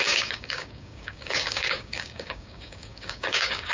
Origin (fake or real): fake